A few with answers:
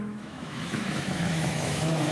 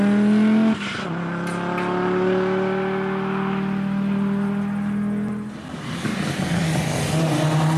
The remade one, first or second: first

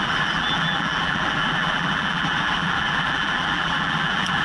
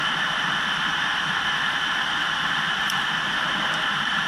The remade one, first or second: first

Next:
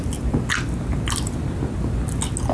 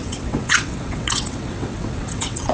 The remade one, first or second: second